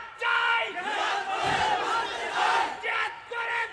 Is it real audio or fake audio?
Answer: fake